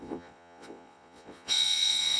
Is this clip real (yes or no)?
no